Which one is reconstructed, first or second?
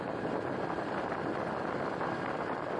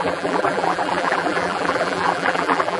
second